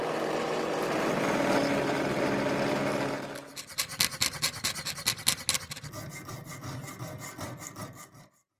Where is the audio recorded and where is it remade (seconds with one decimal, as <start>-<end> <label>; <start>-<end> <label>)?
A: 0.0-8.6 recorded